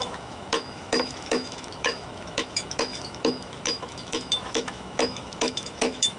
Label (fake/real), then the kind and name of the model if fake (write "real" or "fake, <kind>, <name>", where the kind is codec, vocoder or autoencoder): fake, autoencoder, DAC-VAE